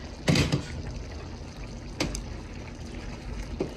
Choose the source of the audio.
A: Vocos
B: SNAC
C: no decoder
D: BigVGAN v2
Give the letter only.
C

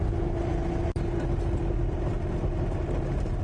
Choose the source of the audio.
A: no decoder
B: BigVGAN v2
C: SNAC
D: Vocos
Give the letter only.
A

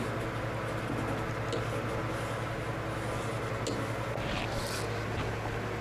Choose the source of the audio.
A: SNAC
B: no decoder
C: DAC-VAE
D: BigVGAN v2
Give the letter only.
B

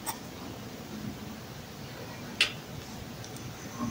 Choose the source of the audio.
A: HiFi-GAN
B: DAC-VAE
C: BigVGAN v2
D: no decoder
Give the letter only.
D